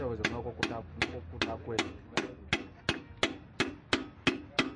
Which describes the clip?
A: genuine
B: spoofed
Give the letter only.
A